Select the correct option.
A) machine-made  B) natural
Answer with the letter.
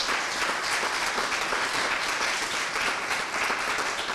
B